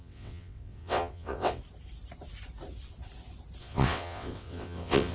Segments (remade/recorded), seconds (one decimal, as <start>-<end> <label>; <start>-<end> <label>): 0.0-1.6 remade; 1.6-3.6 recorded; 3.6-5.1 remade